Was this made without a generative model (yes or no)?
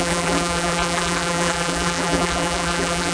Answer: no